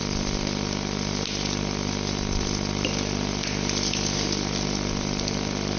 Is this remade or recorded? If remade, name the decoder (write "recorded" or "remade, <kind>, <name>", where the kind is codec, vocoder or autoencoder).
recorded